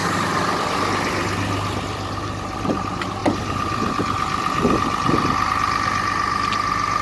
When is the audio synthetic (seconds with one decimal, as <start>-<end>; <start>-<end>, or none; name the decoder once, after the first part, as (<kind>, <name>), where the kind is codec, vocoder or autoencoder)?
none